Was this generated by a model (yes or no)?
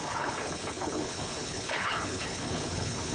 yes